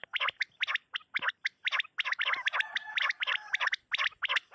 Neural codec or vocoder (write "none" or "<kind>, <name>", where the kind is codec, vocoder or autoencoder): none